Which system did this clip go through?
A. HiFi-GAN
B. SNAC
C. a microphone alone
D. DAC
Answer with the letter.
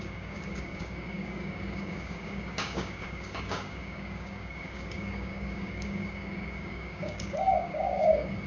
D